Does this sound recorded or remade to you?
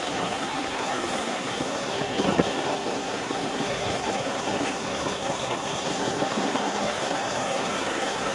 remade